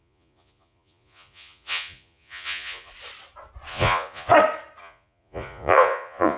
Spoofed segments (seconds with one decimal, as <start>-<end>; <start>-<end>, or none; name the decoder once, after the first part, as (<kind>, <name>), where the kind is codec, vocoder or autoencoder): 0.0-2.9 (vocoder, Vocos); 3.7-4.3; 4.8-6.4